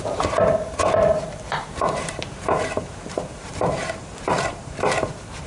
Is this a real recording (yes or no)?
no